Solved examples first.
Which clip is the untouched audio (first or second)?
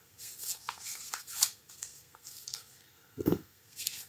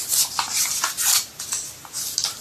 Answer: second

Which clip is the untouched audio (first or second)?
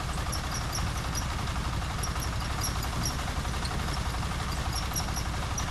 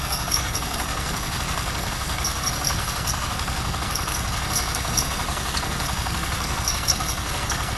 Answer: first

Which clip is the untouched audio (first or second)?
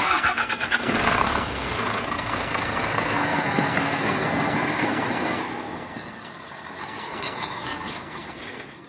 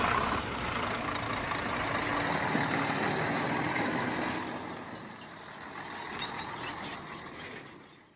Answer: second